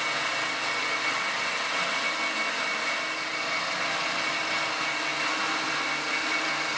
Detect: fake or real real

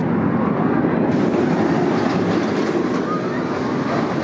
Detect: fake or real real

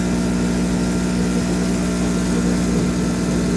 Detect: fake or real real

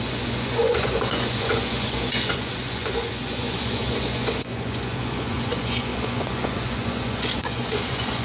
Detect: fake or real fake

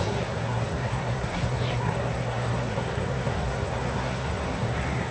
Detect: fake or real fake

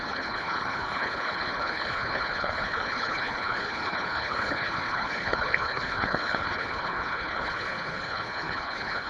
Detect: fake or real fake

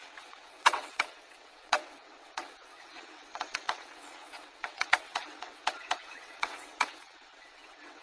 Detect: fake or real fake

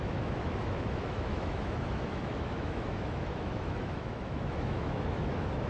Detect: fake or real fake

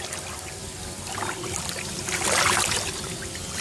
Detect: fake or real real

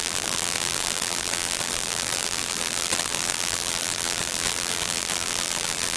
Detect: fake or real fake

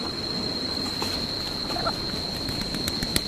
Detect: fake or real real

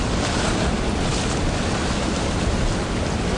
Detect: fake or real real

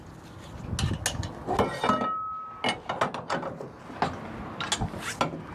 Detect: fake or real real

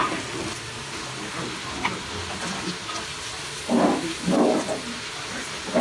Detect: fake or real real